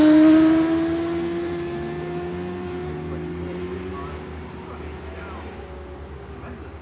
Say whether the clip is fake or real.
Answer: real